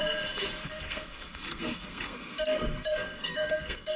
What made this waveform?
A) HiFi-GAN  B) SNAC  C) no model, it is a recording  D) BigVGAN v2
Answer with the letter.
B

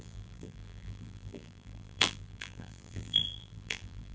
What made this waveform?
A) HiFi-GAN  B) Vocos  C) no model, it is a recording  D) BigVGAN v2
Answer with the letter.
D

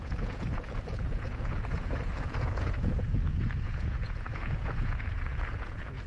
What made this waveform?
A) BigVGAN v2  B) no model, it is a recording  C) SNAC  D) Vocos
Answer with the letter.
D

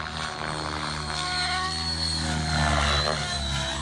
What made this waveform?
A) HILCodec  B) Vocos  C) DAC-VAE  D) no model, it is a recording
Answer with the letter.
D